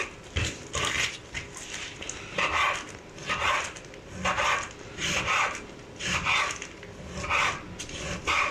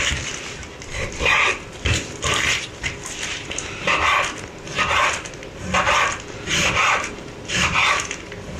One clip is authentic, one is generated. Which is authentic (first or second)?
first